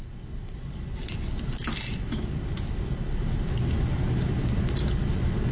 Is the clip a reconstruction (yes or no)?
no